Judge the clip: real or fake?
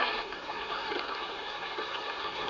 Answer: fake